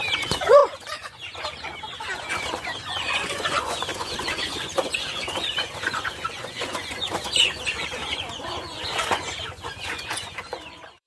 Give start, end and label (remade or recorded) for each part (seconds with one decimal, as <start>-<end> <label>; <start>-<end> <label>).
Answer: 0.0-11.1 remade